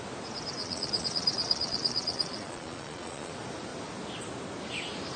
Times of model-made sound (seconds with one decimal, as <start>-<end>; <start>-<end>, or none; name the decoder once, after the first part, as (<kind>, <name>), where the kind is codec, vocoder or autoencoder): 0.6-3.3 (vocoder, Vocos)